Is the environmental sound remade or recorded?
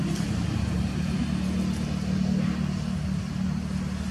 recorded